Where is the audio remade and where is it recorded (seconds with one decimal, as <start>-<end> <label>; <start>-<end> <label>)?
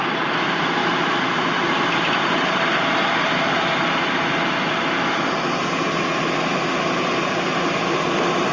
0.0-0.8 recorded; 0.8-5.1 remade; 5.1-8.5 recorded